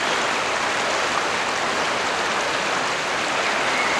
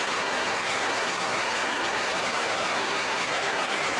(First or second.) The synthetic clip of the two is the second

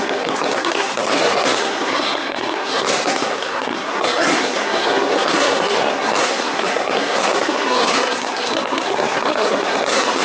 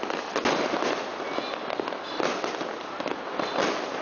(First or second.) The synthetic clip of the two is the first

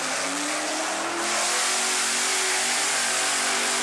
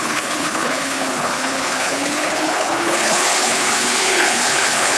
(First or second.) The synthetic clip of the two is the second